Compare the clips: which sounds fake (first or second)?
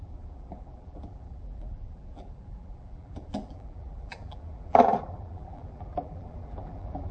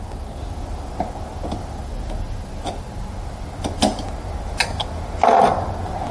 first